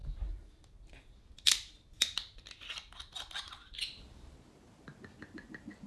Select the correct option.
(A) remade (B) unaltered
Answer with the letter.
B